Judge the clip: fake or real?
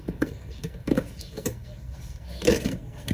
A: fake